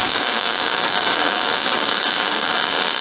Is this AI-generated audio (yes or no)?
yes